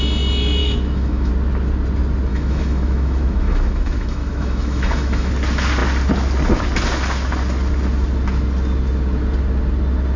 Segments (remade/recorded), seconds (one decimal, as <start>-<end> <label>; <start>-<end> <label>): 0.0-0.6 recorded; 0.6-1.3 remade; 1.3-2.3 recorded; 2.3-5.3 remade; 5.3-10.2 recorded